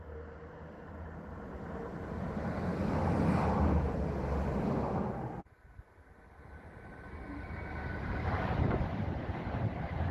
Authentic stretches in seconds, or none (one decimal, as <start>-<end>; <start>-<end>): 0.0-2.7; 4.9-10.1